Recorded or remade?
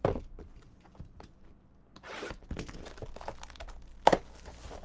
recorded